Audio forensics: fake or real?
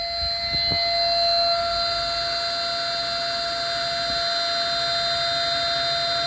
real